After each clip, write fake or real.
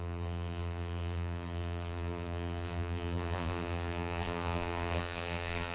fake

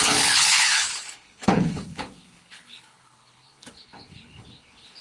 fake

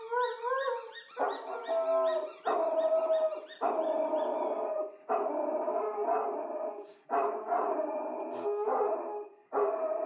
real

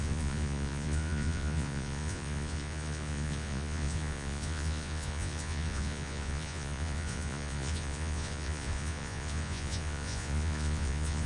fake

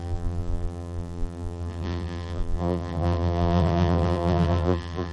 fake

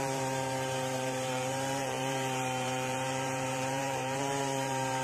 fake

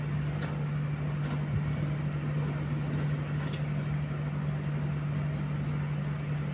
real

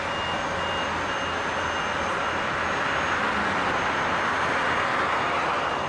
real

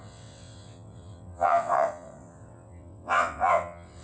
fake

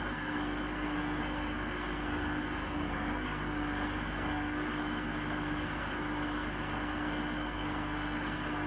fake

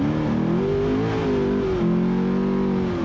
real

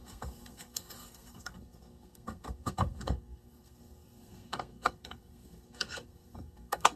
fake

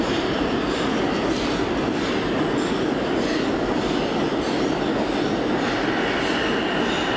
real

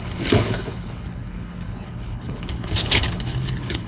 fake